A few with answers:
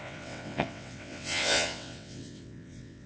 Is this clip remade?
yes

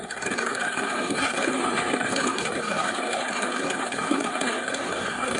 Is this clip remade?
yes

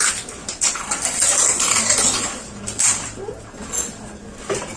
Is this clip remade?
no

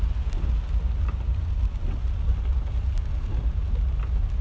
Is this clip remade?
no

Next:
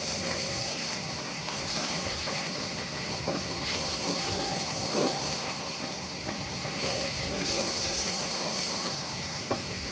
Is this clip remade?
yes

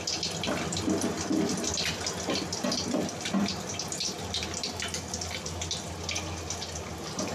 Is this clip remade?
no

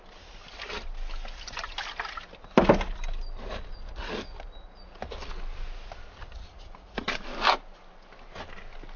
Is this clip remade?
no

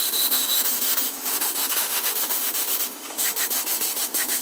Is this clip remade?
yes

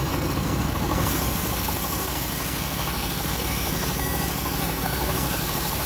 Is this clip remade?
yes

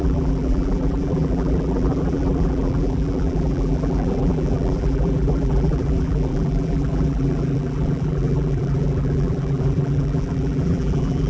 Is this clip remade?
yes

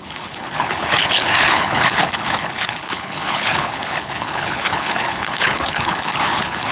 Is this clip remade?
yes